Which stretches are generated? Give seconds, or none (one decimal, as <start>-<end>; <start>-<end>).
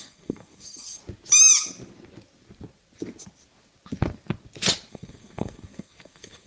0.0-1.0; 4.9-6.5